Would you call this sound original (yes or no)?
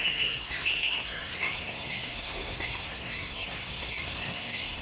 no